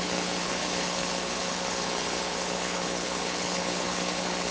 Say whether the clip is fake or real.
fake